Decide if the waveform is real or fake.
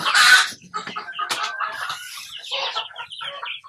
real